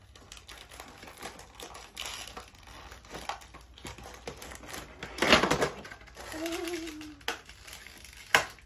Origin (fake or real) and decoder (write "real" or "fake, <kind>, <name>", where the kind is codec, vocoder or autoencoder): real